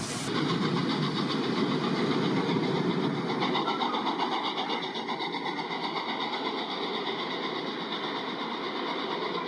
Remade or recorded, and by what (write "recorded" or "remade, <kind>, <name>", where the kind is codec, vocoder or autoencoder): recorded